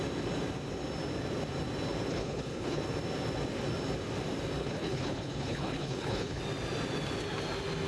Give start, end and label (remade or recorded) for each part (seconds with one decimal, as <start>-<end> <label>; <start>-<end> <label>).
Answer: 0.0-2.1 recorded; 2.1-2.8 remade; 2.8-4.6 recorded; 4.6-6.4 remade; 6.4-7.9 recorded